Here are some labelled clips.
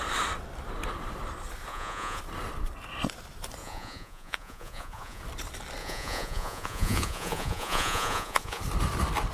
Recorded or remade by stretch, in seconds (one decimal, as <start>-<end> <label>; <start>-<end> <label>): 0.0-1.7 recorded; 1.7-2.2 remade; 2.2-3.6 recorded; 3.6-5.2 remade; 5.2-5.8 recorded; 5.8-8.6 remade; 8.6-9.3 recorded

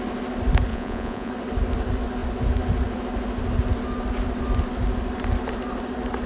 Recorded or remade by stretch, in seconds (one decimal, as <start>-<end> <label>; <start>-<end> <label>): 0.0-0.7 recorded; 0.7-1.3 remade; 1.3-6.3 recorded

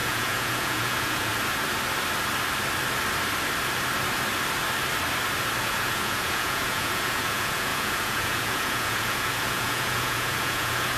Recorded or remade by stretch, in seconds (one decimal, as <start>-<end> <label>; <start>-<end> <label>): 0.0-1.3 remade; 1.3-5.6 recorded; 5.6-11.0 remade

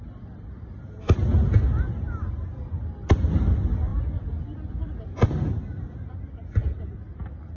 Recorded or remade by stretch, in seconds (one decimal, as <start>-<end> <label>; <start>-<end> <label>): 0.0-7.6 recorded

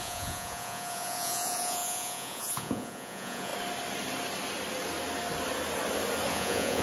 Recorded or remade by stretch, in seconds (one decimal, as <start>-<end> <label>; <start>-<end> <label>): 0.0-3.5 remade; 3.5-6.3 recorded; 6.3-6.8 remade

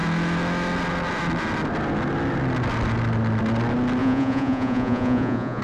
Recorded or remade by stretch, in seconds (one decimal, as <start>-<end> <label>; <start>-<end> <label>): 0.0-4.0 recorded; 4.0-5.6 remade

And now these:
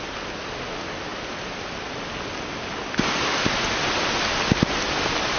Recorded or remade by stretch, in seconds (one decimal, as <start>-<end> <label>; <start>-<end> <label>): 0.0-5.4 recorded